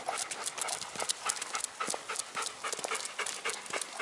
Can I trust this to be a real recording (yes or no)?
yes